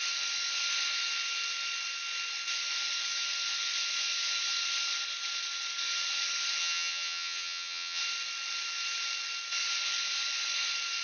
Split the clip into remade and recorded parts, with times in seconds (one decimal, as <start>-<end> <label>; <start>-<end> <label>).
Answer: 0.0-6.6 recorded; 6.6-8.0 remade; 8.0-11.0 recorded